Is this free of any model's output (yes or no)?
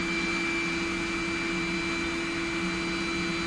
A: yes